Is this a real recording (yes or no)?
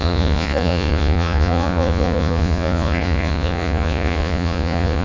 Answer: no